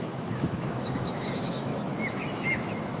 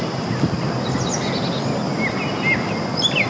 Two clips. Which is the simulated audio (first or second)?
first